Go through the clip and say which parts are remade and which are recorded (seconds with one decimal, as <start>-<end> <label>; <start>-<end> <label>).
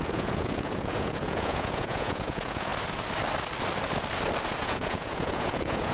0.0-2.7 remade; 2.7-4.6 recorded; 4.6-5.9 remade